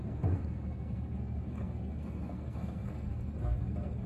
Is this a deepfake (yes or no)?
yes